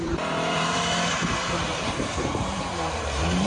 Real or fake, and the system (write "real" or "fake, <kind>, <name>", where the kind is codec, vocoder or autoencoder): fake, vocoder, BigVGAN v2